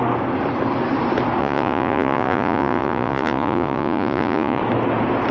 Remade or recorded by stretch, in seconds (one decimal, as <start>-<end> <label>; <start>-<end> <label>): 0.0-1.4 recorded; 1.4-4.6 remade; 4.6-5.3 recorded